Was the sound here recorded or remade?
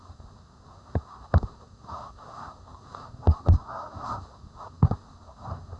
remade